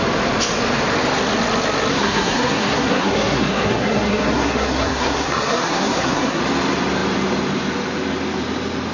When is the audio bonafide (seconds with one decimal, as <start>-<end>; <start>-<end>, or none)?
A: 0.0-1.9; 6.4-8.9